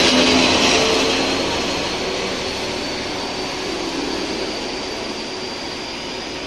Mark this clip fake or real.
real